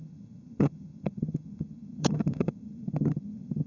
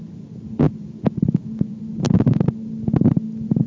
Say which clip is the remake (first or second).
first